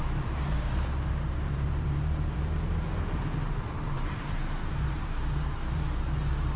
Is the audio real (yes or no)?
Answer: no